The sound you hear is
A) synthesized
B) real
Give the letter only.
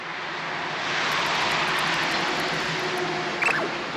B